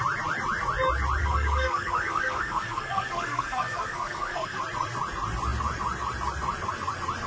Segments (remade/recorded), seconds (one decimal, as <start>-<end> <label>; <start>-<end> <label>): 0.0-1.2 recorded; 1.2-4.6 remade; 4.6-7.3 recorded